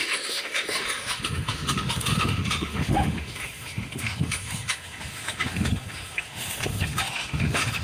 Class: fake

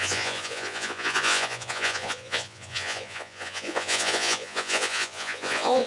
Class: fake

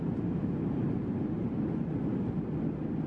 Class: real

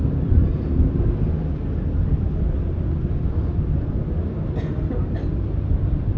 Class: fake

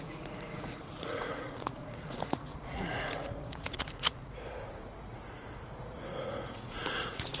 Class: fake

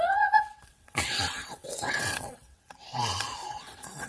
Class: fake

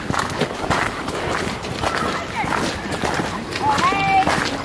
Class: real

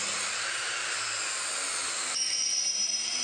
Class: real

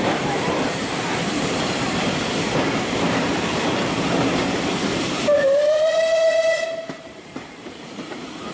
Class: fake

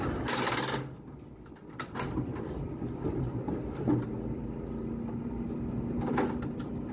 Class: real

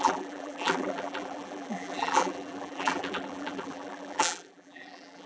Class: fake